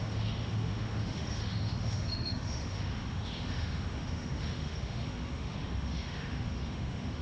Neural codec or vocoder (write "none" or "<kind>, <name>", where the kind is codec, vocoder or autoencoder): autoencoder, DAC-VAE